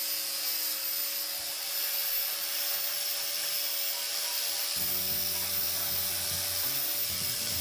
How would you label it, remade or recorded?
recorded